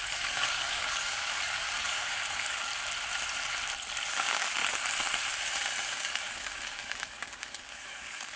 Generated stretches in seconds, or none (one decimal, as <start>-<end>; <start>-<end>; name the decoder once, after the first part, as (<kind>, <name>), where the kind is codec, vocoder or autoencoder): 0.0-2.7 (codec, DAC); 4.1-4.6; 5.8-8.4

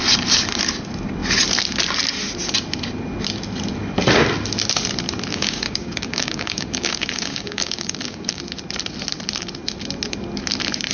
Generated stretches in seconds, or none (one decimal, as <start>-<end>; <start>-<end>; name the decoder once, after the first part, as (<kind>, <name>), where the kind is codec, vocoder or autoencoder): 5.3-8.4 (codec, DAC)

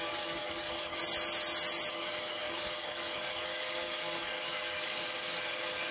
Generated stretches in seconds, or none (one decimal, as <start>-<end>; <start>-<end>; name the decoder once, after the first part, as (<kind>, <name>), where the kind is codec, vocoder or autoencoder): 0.0-1.0 (codec, DAC); 1.9-5.9

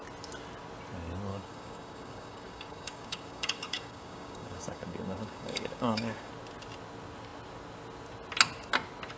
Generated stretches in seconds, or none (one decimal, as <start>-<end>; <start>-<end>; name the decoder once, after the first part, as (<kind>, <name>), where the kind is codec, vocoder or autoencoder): 1.3-6.3 (codec, DAC)

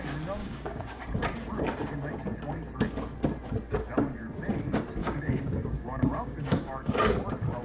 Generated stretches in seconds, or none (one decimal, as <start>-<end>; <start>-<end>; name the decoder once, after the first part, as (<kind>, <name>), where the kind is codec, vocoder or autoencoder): 0.4-1.0 (codec, DAC); 5.0-6.9

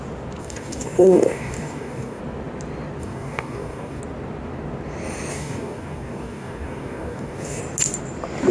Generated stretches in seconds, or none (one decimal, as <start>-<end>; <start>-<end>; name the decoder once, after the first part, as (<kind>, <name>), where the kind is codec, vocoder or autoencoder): 0.4-2.2 (codec, DAC); 3.0-4.0; 5.3-7.6

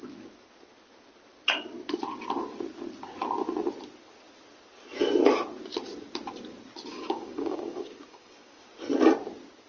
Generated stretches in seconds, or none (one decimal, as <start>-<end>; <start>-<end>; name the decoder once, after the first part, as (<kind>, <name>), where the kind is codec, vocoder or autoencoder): 6.9-8.6 (codec, DAC)

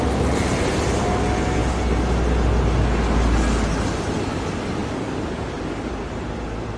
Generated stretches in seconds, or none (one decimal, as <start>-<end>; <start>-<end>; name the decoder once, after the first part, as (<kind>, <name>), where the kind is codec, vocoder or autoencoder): 4.8-5.9 (codec, DAC)